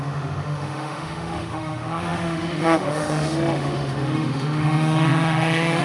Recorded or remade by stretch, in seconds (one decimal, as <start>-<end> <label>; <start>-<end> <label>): 0.0-5.8 remade